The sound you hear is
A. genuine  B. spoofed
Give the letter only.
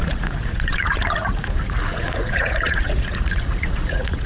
B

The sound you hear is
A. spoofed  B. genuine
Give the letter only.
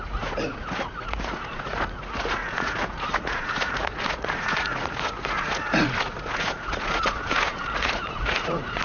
A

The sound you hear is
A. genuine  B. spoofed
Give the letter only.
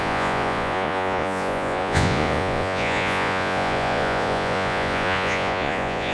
B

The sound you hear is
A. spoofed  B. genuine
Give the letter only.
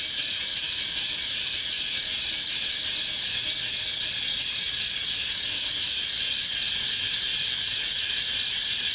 B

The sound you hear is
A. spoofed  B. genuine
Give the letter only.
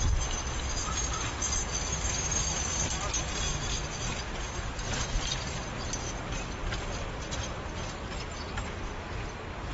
B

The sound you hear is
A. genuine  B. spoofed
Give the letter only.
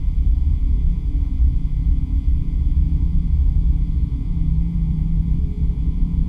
B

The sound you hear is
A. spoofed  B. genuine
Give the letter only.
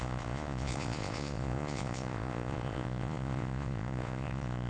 A